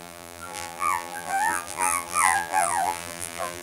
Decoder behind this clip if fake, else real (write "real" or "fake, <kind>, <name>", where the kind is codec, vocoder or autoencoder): fake, vocoder, BigVGAN v2